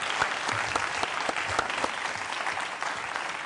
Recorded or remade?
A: recorded